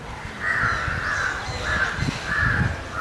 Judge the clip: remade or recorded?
recorded